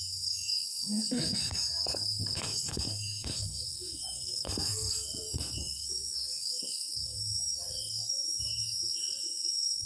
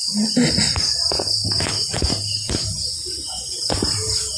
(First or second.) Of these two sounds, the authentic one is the second